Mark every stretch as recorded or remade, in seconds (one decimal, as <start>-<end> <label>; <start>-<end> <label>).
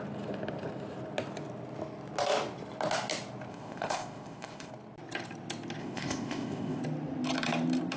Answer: 0.0-3.5 recorded; 3.5-4.7 remade; 4.7-5.8 recorded; 5.8-6.8 remade; 6.8-8.0 recorded